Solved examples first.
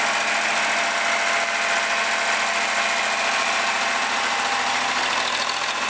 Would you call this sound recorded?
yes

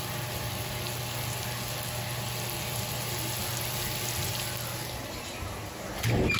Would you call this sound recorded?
yes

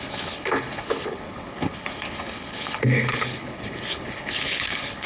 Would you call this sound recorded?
no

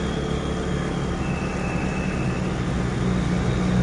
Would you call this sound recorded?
yes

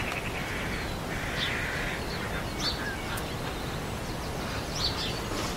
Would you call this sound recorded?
yes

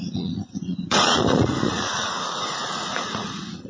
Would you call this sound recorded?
no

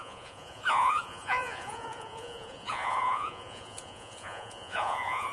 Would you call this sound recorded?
no